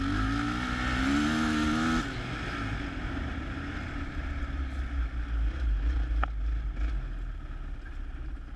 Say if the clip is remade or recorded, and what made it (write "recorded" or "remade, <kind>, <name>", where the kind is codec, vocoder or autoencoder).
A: recorded